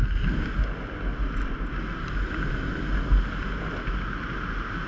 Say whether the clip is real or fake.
real